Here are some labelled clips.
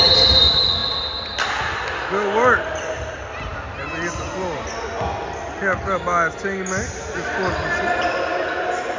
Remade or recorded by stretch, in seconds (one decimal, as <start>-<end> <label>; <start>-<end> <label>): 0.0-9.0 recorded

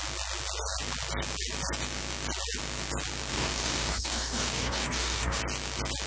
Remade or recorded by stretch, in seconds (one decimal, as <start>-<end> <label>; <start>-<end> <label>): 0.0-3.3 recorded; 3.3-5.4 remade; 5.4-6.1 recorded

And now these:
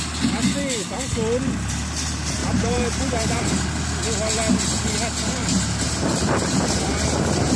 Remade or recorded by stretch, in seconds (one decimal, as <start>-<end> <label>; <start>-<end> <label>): 0.0-2.4 recorded; 2.4-3.4 remade; 3.4-5.4 recorded; 5.4-7.6 remade

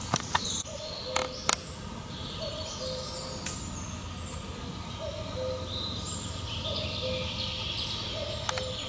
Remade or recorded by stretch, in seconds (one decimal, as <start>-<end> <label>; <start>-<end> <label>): 0.0-8.9 recorded

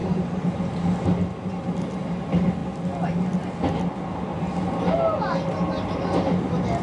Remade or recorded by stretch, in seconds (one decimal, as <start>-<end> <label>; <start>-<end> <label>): 0.0-0.8 remade; 0.8-6.8 recorded

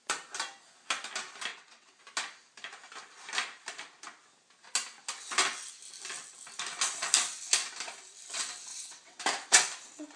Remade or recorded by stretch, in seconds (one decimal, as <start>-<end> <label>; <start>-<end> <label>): 0.0-1.5 recorded; 1.5-2.0 remade; 2.0-8.7 recorded; 8.7-9.2 remade; 9.2-10.2 recorded

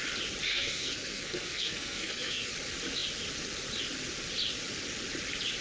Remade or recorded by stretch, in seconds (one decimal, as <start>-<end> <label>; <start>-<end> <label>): 0.0-0.5 recorded; 0.5-2.5 remade; 2.5-5.6 recorded